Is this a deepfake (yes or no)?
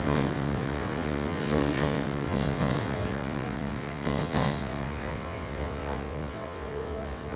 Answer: yes